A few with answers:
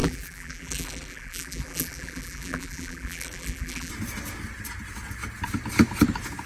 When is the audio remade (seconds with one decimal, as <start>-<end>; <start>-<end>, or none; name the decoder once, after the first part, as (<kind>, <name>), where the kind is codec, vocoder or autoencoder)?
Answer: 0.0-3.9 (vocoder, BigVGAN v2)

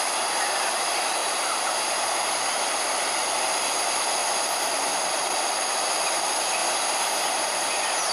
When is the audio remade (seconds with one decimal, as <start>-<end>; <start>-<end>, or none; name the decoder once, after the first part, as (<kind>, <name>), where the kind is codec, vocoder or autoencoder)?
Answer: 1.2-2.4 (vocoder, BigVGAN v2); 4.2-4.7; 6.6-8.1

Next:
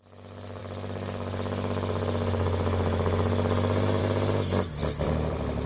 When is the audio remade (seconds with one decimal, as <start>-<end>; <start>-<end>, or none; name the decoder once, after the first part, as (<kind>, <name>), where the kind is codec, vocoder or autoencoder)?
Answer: 4.8-5.7 (vocoder, BigVGAN v2)

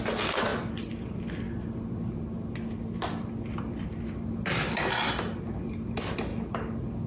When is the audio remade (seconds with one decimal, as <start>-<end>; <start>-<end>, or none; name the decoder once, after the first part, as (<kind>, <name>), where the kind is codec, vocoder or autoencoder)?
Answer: none

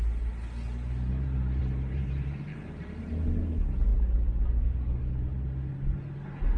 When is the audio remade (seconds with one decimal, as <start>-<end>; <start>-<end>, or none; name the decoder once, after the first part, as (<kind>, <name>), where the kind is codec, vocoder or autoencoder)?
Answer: 1.6-3.3 (vocoder, BigVGAN v2)

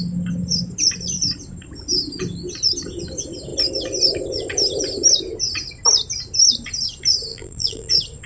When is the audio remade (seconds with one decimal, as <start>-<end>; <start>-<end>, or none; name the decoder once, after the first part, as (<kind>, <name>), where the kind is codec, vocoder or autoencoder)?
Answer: 7.3-7.9 (vocoder, BigVGAN v2)

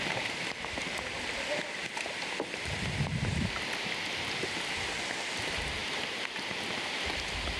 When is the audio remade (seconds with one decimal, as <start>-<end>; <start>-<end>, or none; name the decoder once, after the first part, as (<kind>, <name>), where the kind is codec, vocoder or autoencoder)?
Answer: 0.0-7.6 (vocoder, BigVGAN v2)

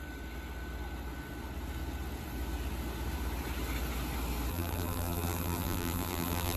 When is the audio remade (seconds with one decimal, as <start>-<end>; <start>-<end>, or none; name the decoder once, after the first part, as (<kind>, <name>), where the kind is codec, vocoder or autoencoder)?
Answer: 4.5-6.6 (vocoder, BigVGAN v2)